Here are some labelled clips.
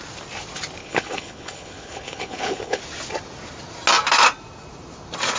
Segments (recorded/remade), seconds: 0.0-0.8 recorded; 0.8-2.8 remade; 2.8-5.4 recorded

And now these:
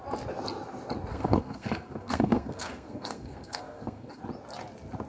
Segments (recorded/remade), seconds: 0.0-1.1 recorded; 1.1-4.2 remade; 4.2-5.1 recorded

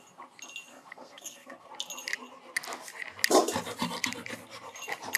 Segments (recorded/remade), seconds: 0.0-0.7 recorded; 0.7-1.7 remade; 1.7-5.2 recorded

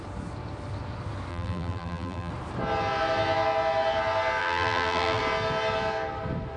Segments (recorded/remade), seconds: 0.0-1.3 recorded; 1.3-2.3 remade; 2.3-4.4 recorded; 4.4-5.2 remade; 5.2-6.6 recorded